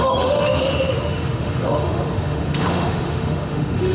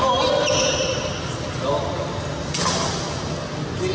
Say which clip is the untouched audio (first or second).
second